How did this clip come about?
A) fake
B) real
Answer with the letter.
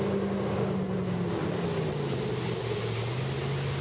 B